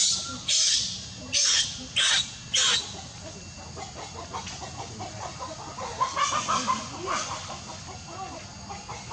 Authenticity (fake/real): real